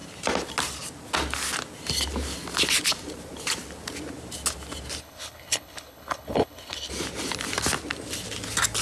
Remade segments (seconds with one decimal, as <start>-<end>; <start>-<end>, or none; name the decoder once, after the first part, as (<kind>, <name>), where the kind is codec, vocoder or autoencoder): 5.0-6.9 (codec, HILCodec)